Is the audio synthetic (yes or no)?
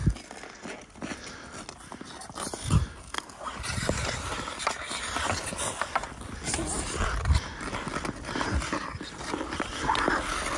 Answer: no